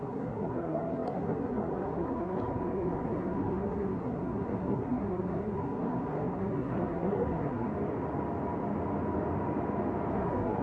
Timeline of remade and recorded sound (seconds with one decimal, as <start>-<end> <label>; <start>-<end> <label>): 0.0-7.7 remade; 7.7-10.1 recorded; 10.1-10.6 remade